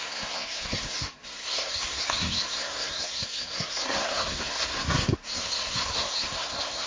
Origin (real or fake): fake